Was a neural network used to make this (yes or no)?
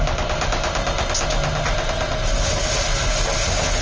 no